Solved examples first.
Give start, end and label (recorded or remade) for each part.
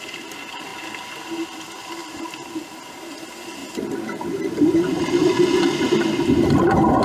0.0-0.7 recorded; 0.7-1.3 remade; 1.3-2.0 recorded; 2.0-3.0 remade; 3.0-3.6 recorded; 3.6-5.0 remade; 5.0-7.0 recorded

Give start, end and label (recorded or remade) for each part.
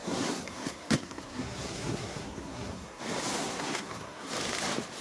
0.0-3.0 remade; 3.0-3.4 recorded; 3.4-4.3 remade; 4.3-5.0 recorded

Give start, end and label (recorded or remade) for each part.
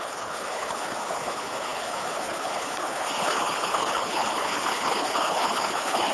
0.0-6.1 remade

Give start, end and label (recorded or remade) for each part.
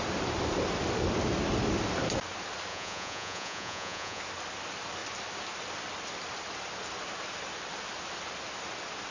0.0-2.7 recorded; 2.7-4.2 remade; 4.2-9.1 recorded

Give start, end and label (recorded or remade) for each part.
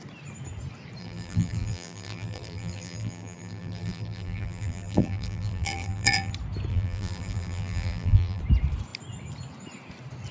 0.0-1.0 recorded; 1.0-6.3 remade; 6.3-6.7 recorded; 6.7-8.4 remade; 8.4-10.3 recorded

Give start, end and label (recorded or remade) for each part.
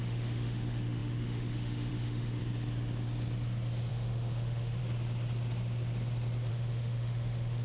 0.0-2.4 remade; 2.4-3.9 recorded; 3.9-4.8 remade; 4.8-6.5 recorded; 6.5-7.6 remade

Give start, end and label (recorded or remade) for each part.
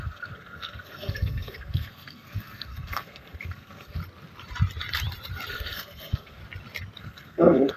0.0-4.0 remade; 4.0-5.5 recorded; 5.5-6.4 remade; 6.4-7.0 recorded; 7.0-7.8 remade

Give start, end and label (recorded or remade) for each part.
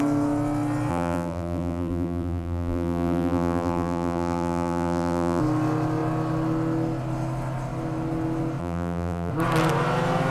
0.0-0.9 recorded; 0.9-5.4 remade; 5.4-8.6 recorded; 8.6-9.3 remade; 9.3-10.3 recorded